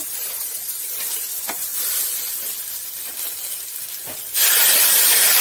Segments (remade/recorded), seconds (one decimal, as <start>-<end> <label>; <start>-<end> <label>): 0.0-1.7 remade; 1.7-4.9 recorded; 4.9-5.4 remade